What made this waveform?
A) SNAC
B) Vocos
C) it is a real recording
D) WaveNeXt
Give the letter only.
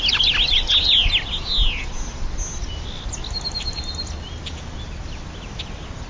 C